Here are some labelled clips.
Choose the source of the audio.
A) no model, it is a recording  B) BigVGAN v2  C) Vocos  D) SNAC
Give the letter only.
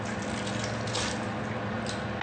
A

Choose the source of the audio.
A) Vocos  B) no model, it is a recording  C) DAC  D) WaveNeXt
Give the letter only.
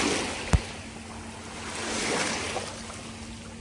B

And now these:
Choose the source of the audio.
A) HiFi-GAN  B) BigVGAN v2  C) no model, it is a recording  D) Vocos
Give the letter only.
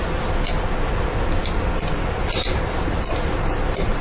C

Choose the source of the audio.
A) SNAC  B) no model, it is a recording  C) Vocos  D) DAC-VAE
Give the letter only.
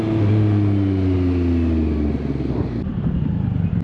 B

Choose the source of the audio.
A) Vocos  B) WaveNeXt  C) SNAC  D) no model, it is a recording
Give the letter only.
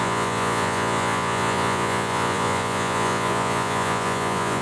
A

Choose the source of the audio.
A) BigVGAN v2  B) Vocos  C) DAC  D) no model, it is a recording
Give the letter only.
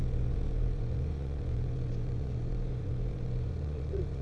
B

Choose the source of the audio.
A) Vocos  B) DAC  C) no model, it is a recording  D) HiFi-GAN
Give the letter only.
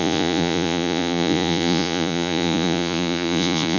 A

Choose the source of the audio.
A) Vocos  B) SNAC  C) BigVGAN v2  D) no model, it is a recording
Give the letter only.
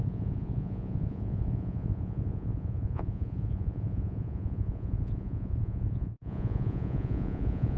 A